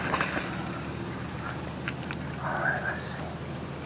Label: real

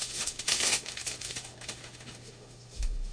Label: fake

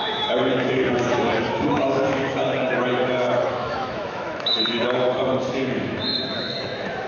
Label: fake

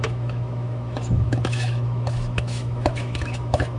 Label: fake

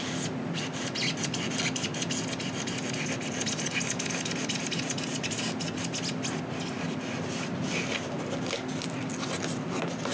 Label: real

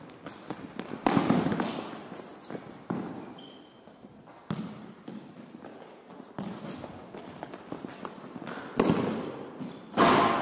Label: real